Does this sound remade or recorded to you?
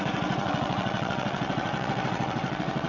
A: remade